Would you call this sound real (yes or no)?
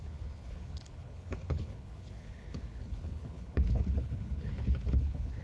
no